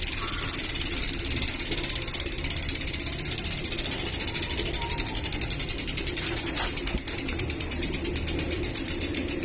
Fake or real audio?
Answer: fake